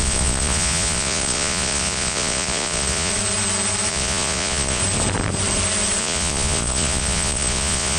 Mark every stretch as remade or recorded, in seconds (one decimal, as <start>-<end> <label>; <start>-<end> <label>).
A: 0.0-3.1 remade; 3.1-3.9 recorded; 3.9-4.8 remade; 4.8-6.0 recorded; 6.0-8.0 remade